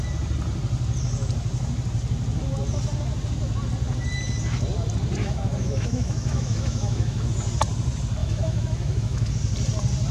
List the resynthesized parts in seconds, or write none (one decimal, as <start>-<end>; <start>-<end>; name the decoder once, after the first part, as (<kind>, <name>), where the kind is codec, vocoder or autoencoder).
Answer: 5.2-7.3 (autoencoder, DAC-VAE); 8.2-9.3